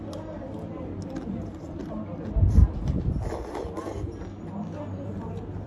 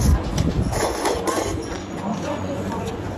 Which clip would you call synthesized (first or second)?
second